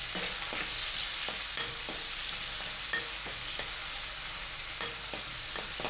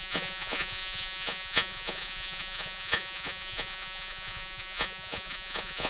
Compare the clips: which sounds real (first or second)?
first